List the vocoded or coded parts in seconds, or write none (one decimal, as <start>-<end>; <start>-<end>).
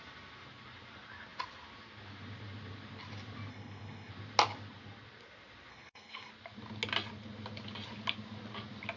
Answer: 3.5-4.1; 5.7-6.3